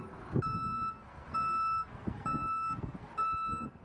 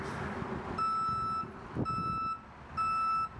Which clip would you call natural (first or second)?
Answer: second